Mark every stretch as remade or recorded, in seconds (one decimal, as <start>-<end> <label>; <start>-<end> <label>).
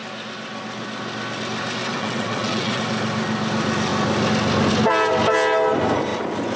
0.0-1.8 recorded; 1.8-2.8 remade; 2.8-6.6 recorded